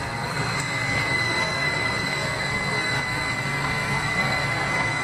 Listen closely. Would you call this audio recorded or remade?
remade